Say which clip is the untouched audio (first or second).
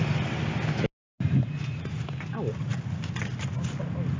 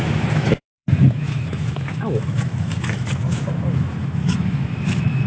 first